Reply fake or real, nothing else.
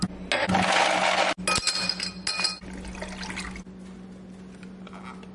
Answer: real